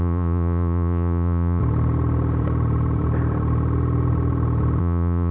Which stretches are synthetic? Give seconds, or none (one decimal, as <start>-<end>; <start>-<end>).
0.0-1.6; 4.8-5.3